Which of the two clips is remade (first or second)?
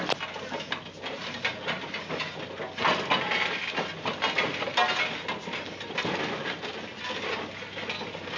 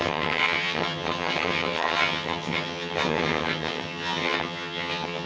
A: second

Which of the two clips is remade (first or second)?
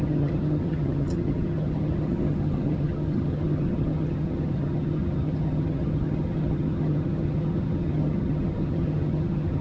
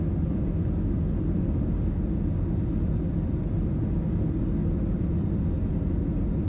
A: first